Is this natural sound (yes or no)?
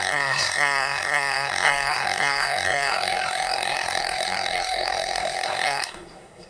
no